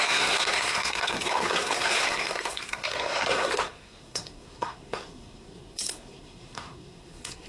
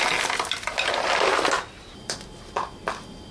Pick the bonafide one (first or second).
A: second